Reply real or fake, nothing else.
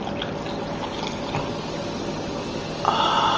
real